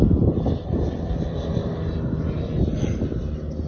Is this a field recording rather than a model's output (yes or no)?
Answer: yes